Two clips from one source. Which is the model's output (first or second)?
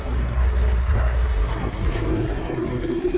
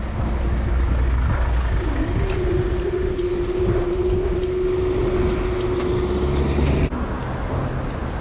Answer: first